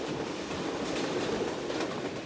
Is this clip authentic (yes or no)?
yes